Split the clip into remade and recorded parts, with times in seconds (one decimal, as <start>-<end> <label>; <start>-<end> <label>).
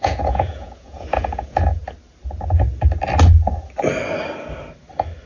0.0-1.8 remade; 1.8-5.3 recorded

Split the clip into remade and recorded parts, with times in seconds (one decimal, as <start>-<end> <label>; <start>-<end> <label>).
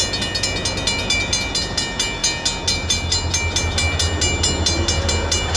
0.0-5.6 recorded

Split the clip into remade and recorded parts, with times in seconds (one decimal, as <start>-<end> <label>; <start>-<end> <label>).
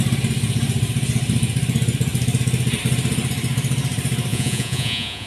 0.0-4.3 recorded; 4.3-5.3 remade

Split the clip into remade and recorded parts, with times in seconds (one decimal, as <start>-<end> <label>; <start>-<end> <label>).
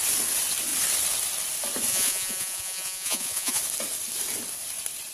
0.0-1.9 recorded; 1.9-3.6 remade; 3.6-5.1 recorded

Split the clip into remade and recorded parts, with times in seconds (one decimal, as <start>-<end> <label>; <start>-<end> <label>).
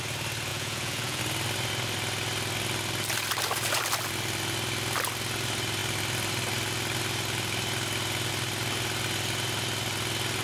0.0-0.5 recorded; 0.5-1.2 remade; 1.2-10.4 recorded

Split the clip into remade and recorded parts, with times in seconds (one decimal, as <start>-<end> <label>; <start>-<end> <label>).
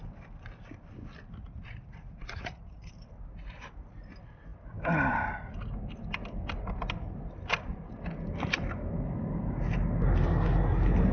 0.0-1.4 recorded; 1.4-2.9 remade; 2.9-11.1 recorded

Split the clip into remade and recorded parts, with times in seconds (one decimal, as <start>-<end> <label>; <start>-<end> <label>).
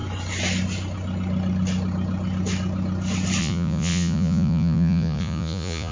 0.0-3.4 recorded; 3.4-5.9 remade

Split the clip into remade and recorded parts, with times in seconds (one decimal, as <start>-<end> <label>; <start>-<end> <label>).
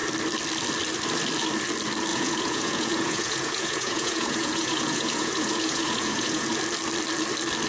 0.0-2.1 recorded; 2.1-6.5 remade; 6.5-7.7 recorded